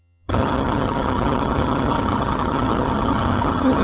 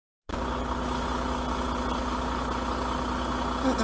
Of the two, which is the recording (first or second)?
second